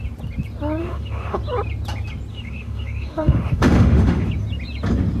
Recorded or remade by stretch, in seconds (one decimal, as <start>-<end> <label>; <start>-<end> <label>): 0.0-0.8 recorded; 0.8-1.4 remade; 1.4-2.3 recorded; 2.3-4.3 remade; 4.3-5.2 recorded